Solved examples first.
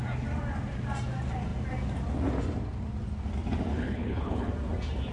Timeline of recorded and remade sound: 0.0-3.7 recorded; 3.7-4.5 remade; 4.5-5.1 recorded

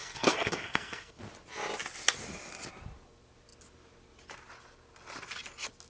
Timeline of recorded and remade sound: 0.0-1.2 remade; 1.2-5.9 recorded

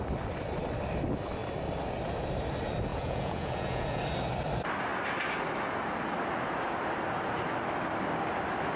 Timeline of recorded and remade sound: 0.0-2.9 recorded; 2.9-4.0 remade; 4.0-8.8 recorded

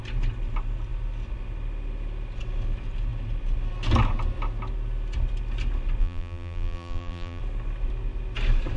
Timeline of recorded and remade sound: 0.0-6.0 recorded; 6.0-7.4 remade; 7.4-8.8 recorded

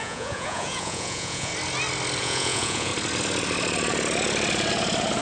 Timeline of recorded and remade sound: 0.0-1.5 remade; 1.5-2.2 recorded; 2.2-2.9 remade; 2.9-5.2 recorded

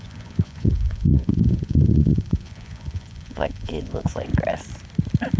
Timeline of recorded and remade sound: 0.0-4.3 remade; 4.3-5.4 recorded